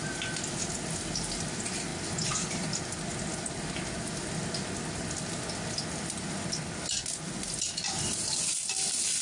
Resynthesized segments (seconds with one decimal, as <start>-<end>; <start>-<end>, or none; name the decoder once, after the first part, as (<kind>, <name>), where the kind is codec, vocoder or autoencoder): none